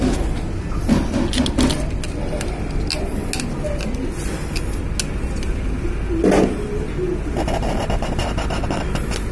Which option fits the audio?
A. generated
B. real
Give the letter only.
B